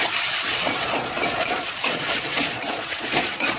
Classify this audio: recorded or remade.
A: remade